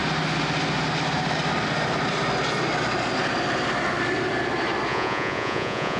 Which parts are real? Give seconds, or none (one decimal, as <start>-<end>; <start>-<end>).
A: 0.0-4.9